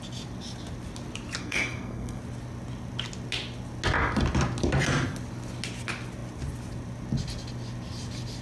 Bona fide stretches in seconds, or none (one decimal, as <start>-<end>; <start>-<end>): 0.0-1.4; 2.2-8.4

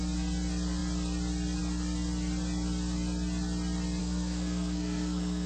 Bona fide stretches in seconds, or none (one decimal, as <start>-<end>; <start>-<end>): 0.0-4.0

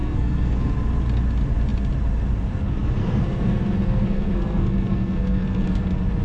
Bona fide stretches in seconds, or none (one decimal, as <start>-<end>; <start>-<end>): 0.7-3.0; 5.8-6.2

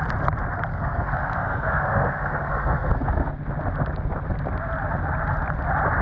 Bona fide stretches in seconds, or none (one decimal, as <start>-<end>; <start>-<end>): 0.0-0.7; 3.3-6.0

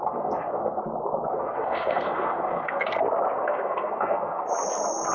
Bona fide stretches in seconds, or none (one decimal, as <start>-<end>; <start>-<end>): 0.8-1.3; 3.0-3.4; 4.4-5.1

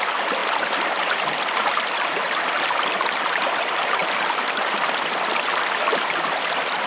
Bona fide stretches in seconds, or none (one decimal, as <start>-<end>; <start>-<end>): 0.0-6.9

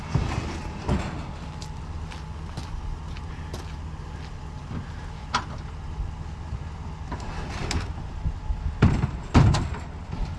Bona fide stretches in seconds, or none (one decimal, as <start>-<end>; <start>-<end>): 0.0-10.4

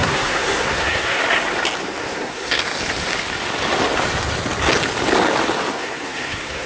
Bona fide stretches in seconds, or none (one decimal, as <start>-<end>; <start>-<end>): 1.2-2.0; 2.6-5.7